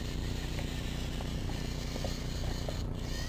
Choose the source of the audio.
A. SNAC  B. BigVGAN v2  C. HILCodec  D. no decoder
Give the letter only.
B